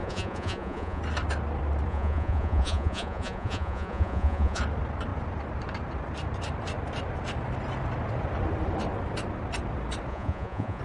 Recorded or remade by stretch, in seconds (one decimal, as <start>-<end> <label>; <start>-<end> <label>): 0.0-1.0 remade; 1.0-1.9 recorded; 1.9-4.6 remade; 4.6-10.1 recorded; 10.1-10.8 remade